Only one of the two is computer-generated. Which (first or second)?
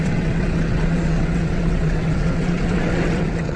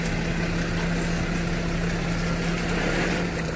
first